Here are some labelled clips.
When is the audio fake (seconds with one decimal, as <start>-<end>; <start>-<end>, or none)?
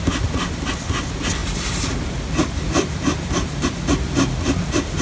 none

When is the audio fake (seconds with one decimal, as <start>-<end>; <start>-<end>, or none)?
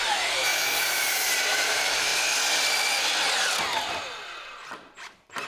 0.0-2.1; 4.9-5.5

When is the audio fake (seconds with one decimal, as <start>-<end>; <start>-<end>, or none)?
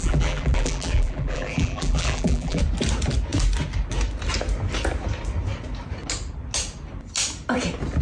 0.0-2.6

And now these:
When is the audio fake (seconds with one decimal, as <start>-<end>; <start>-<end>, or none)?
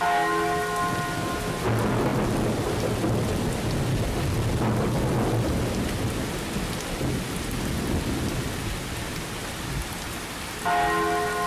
none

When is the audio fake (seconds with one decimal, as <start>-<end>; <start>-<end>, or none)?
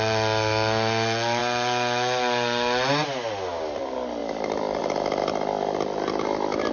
4.2-4.8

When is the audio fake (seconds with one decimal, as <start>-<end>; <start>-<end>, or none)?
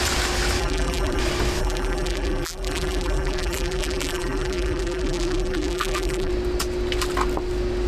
0.6-1.2; 1.6-6.3